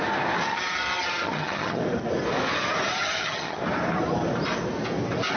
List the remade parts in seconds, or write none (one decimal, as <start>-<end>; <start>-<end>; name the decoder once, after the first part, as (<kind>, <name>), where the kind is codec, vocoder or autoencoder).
0.5-1.8 (vocoder, HiFi-GAN); 3.0-3.6